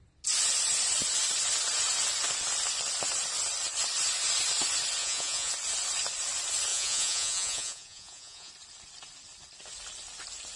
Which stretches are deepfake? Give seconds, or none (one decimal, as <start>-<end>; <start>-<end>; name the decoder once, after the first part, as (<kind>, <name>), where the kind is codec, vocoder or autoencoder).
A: 5.0-5.5 (vocoder, Vocos); 6.7-8.5